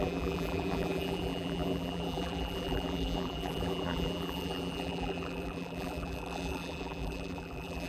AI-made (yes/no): yes